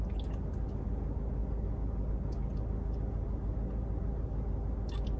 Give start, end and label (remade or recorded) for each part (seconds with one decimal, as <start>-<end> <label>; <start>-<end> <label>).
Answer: 0.0-5.2 recorded